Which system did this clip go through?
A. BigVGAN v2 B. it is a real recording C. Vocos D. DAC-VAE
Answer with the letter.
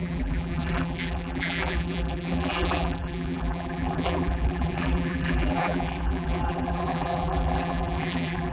A